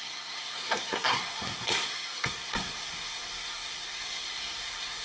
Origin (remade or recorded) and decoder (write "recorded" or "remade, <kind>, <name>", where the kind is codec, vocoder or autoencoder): remade, codec, SNAC